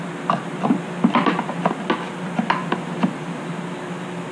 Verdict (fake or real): real